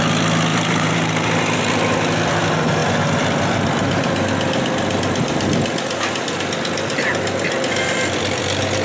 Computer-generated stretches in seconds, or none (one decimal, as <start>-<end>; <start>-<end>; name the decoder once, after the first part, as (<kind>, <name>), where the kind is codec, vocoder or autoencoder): 0.5-1.7 (vocoder, BigVGAN v2)